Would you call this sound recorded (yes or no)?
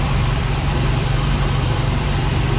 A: no